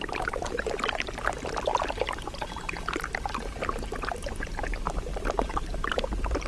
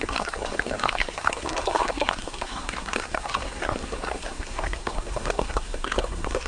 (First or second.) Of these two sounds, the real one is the first